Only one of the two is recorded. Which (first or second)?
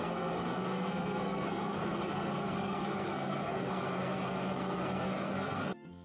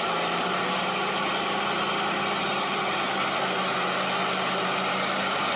second